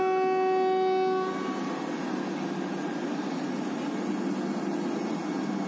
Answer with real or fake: real